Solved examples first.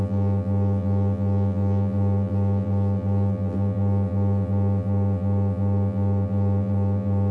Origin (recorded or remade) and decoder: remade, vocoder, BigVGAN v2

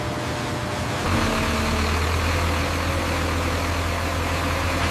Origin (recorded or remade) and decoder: recorded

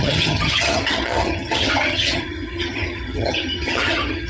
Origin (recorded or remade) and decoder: remade, vocoder, HiFi-GAN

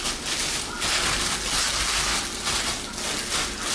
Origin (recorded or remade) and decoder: recorded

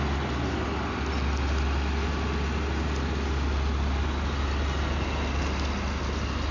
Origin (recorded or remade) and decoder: recorded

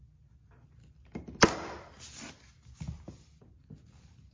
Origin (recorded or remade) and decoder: recorded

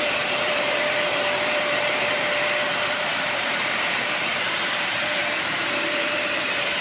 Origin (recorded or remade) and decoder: remade, vocoder, BigVGAN v2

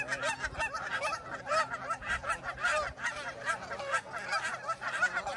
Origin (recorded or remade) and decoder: recorded